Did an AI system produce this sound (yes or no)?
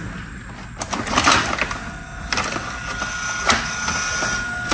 no